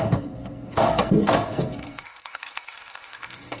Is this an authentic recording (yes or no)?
no